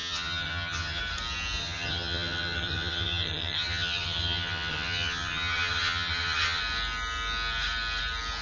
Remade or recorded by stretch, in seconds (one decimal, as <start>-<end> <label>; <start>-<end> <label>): 0.0-1.0 remade; 1.0-1.6 recorded; 1.6-6.6 remade; 6.6-8.4 recorded